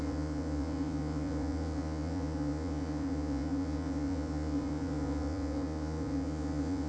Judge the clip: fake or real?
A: fake